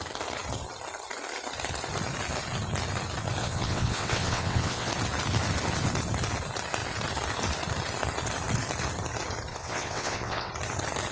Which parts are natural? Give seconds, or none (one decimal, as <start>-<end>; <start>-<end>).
0.0-3.4; 4.9-9.5; 10.5-11.1